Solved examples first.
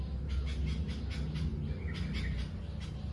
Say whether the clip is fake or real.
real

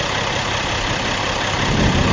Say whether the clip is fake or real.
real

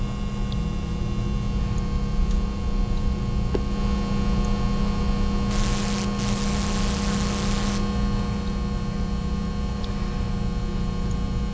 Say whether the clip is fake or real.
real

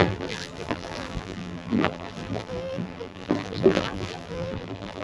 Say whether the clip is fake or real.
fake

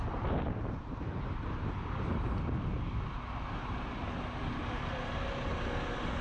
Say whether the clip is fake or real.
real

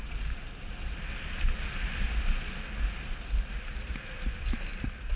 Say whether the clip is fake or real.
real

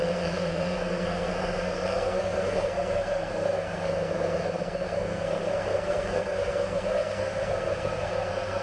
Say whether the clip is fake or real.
fake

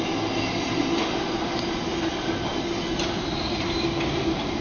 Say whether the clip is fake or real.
real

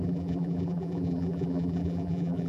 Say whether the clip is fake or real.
fake